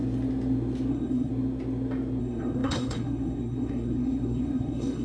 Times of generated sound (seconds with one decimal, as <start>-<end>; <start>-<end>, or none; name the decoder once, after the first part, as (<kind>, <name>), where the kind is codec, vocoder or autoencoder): 0.9-1.3 (codec, SNAC); 2.2-5.0